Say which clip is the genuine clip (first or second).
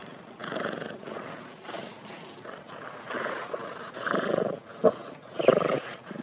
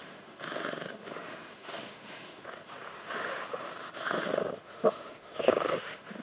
first